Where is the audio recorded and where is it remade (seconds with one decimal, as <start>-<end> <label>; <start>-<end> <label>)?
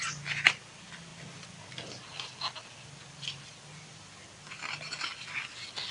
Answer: 0.0-5.9 recorded